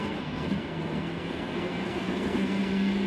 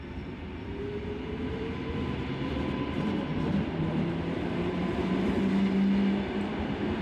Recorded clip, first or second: second